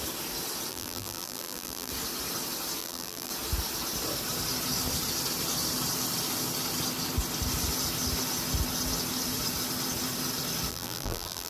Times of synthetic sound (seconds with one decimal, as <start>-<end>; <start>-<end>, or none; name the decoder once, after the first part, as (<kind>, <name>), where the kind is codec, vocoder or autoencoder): 0.7-1.9 (vocoder, BigVGAN v2); 2.8-3.3; 10.7-11.5